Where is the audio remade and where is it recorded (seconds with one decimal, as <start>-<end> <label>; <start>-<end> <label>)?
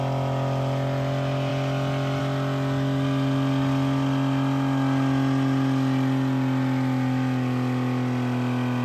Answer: 0.0-8.8 recorded